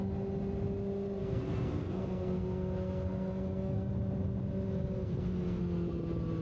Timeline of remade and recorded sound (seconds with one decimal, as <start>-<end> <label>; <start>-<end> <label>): 0.0-1.2 recorded; 1.2-3.9 remade; 3.9-5.0 recorded; 5.0-5.6 remade; 5.6-6.4 recorded